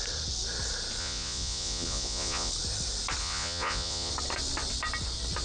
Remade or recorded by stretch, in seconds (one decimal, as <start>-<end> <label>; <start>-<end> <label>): 0.0-1.0 recorded; 1.0-2.5 remade; 2.5-3.2 recorded; 3.2-4.1 remade; 4.1-5.4 recorded